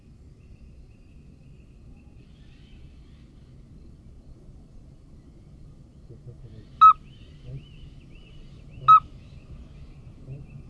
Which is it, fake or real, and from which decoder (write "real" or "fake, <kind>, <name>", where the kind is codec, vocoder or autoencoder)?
real